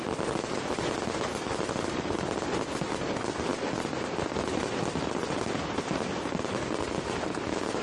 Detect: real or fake real